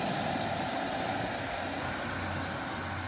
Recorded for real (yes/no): yes